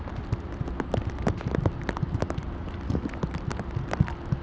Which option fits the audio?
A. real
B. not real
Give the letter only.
A